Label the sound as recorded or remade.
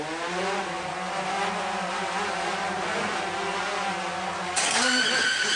recorded